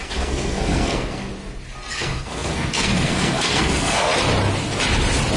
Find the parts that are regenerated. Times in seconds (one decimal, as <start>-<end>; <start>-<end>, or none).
0.0-1.3; 1.9-4.1